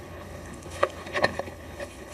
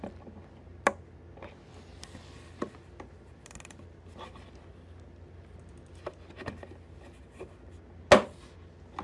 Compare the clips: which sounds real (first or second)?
second